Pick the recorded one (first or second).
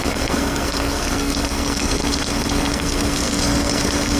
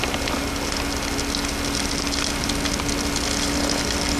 second